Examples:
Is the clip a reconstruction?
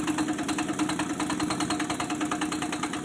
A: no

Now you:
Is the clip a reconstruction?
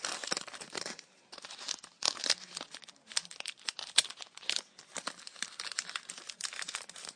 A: no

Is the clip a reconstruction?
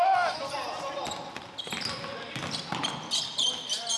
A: no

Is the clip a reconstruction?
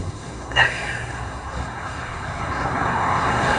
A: yes